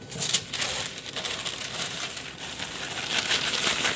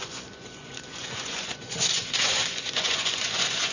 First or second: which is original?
first